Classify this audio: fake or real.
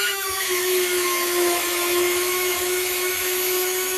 fake